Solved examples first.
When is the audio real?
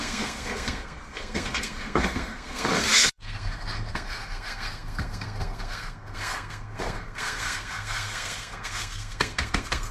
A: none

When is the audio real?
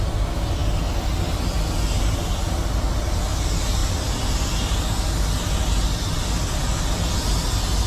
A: 0.0-7.9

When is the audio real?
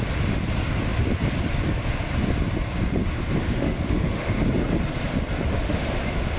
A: 0.0-3.4; 4.3-5.5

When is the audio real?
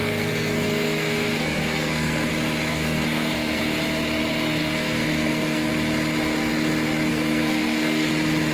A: 2.3-2.7; 3.6-4.6; 5.7-7.1; 8.1-8.5